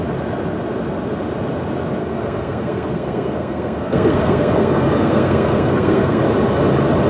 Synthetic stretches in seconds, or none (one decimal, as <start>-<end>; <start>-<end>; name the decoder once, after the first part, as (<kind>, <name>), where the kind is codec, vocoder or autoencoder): 2.0-6.2 (codec, SNAC)